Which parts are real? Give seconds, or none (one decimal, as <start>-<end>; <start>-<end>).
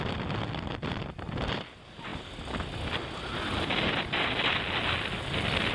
0.0-5.7